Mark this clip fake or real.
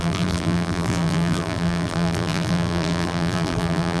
fake